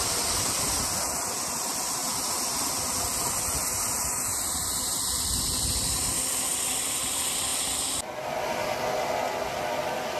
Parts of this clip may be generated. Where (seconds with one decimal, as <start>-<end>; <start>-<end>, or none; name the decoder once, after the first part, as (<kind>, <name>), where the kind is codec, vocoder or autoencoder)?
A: none